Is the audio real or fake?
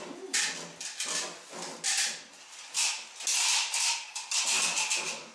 real